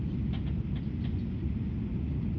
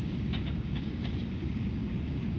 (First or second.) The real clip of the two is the first